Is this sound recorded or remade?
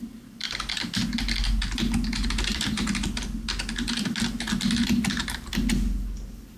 recorded